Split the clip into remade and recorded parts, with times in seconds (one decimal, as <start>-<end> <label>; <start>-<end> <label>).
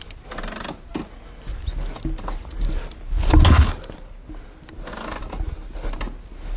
0.0-6.6 recorded